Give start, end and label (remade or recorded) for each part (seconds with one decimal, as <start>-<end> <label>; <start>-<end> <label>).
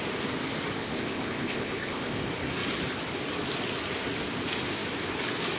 0.0-0.8 recorded; 0.8-2.2 remade; 2.2-5.6 recorded